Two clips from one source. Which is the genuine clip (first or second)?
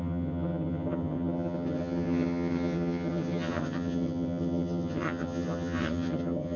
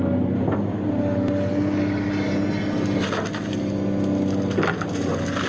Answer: second